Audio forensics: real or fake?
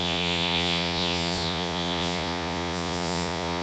fake